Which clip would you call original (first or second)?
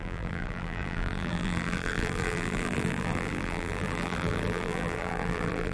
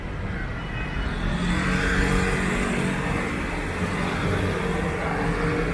second